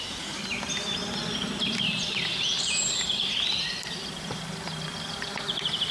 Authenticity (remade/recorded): remade